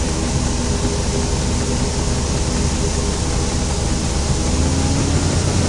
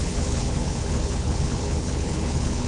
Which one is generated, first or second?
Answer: second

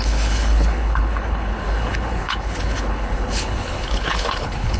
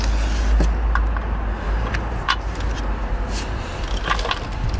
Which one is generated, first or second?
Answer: first